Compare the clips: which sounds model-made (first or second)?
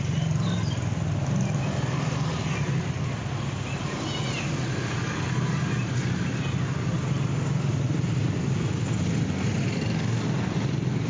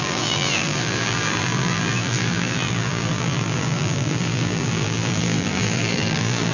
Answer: second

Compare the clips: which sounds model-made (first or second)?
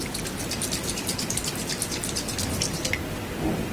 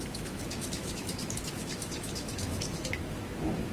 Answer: second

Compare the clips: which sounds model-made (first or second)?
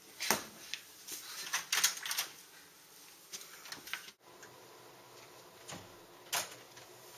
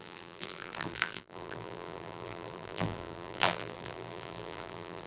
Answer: second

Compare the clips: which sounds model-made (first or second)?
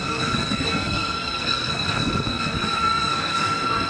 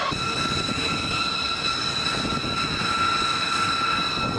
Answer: first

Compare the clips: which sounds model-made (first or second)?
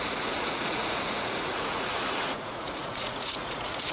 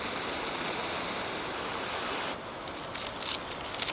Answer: first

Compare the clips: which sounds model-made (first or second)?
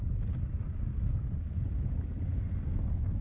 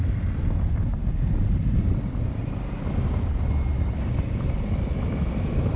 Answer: second